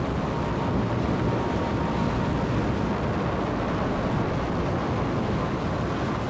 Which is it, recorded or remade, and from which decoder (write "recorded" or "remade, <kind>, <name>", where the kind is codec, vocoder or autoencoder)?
recorded